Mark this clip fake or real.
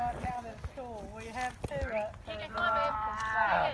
real